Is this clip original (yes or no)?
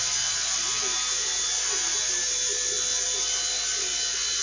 yes